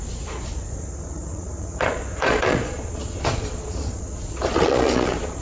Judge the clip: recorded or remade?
remade